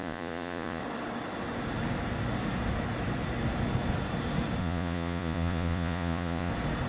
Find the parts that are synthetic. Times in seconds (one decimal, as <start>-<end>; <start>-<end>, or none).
0.0-0.8; 4.6-6.5